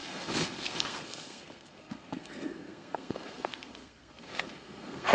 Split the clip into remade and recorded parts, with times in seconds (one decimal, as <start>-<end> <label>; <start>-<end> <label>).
0.0-5.1 remade